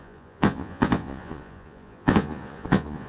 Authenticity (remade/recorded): remade